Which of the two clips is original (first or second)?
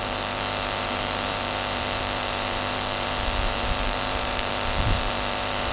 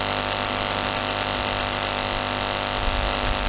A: second